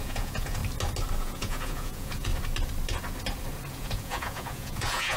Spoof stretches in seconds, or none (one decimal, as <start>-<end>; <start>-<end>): 0.0-0.6; 1.2-2.3; 3.7-5.2